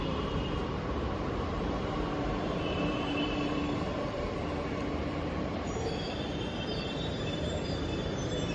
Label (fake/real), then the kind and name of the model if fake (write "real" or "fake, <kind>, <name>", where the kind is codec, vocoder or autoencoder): fake, vocoder, BigVGAN v2